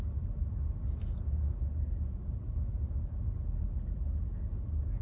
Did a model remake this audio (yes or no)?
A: no